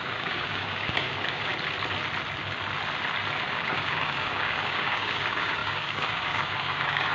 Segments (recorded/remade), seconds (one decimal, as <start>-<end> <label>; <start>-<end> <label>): 0.0-1.5 remade; 1.5-3.5 recorded; 3.5-7.1 remade